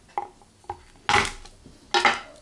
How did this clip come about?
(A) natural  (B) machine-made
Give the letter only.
A